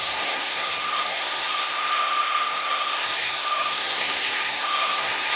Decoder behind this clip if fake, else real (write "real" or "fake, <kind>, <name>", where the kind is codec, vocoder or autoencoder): fake, codec, SNAC